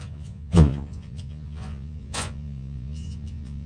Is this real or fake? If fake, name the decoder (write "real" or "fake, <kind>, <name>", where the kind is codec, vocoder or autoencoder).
fake, vocoder, Vocos